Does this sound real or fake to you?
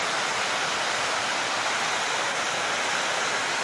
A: real